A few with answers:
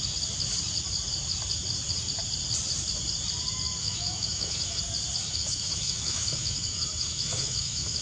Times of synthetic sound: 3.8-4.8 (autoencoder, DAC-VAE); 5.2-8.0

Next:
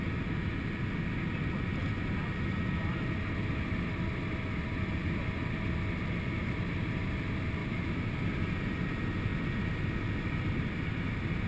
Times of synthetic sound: 7.6-8.1 (autoencoder, DAC-VAE)

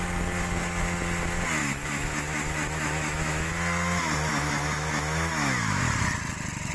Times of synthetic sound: 1.6-3.5 (autoencoder, DAC-VAE); 4.3-5.8